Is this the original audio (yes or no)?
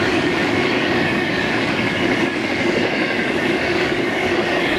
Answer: no